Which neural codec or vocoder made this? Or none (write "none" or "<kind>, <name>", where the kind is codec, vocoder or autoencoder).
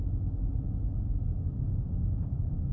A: none